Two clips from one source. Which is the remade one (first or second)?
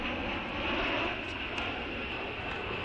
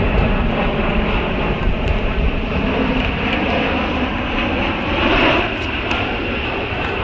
second